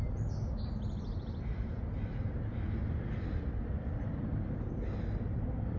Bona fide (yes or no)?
yes